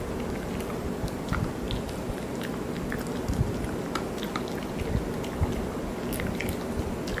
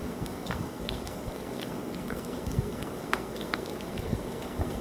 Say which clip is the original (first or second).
first